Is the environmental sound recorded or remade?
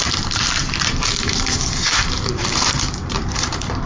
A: remade